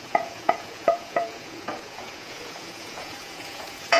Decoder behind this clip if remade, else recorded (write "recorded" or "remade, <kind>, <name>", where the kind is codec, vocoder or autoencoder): remade, vocoder, Vocos